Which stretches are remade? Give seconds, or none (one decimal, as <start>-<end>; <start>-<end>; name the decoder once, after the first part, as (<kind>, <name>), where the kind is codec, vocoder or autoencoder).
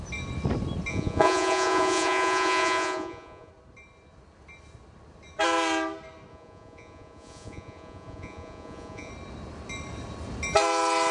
0.9-3.5 (vocoder, Vocos); 6.3-9.1